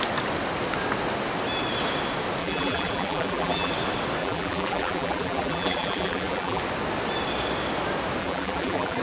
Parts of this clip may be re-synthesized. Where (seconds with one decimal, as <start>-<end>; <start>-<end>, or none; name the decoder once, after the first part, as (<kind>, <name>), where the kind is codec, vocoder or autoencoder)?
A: 2.4-3.7 (vocoder, BigVGAN v2); 4.2-6.6; 8.2-9.0